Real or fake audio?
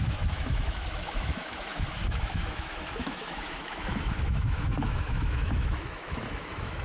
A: fake